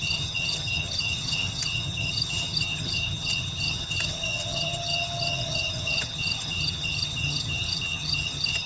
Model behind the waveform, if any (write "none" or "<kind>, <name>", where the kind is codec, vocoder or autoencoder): vocoder, HiFi-GAN